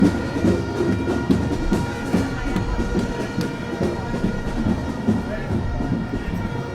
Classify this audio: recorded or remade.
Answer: recorded